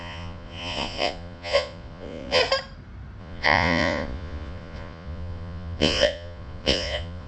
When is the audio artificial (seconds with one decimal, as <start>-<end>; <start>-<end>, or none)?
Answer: 0.0-2.4; 3.2-7.3